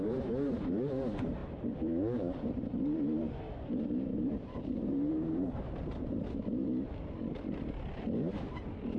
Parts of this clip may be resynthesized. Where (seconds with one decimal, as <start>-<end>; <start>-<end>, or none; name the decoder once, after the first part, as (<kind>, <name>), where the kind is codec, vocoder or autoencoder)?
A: 0.0-6.7 (vocoder, BigVGAN v2)